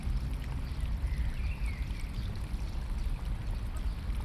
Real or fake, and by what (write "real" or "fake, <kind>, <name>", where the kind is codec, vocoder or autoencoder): real